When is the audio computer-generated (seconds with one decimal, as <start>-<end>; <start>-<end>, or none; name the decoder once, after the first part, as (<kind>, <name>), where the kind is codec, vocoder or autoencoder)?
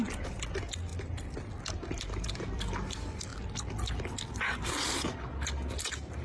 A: 0.9-1.5 (vocoder, BigVGAN v2)